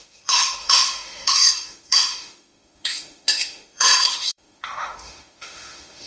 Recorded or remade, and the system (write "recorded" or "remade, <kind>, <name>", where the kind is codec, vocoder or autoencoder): remade, autoencoder, DAC-VAE